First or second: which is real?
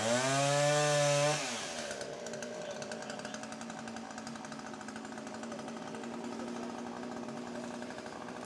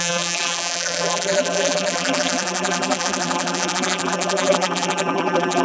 first